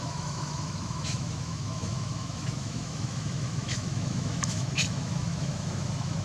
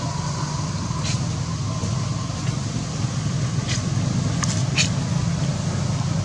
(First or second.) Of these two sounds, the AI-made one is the first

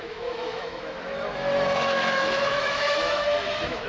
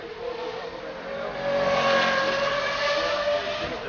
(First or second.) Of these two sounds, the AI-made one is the first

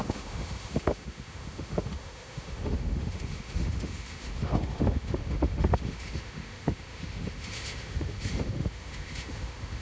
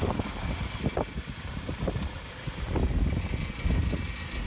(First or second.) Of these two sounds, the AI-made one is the first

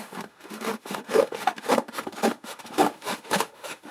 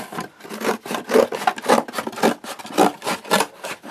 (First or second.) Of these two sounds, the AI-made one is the first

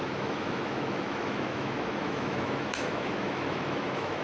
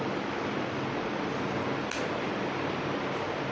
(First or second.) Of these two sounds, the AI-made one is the first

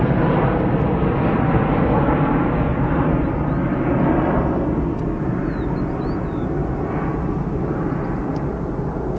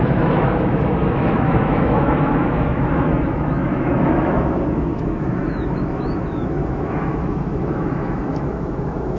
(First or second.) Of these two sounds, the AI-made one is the second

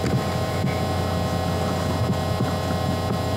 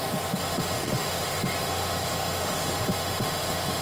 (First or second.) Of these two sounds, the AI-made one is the second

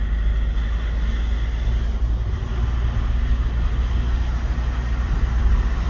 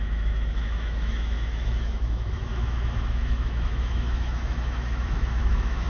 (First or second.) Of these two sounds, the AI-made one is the second